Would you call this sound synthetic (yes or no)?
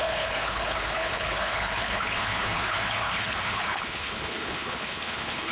yes